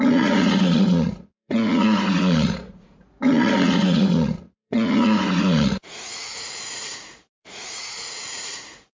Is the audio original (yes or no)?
no